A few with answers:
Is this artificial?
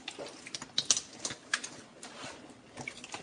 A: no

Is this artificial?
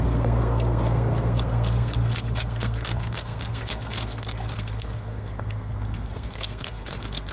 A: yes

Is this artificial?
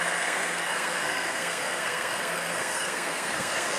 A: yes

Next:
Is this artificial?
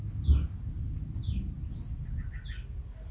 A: no